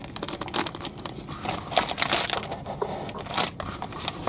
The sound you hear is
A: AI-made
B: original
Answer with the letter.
B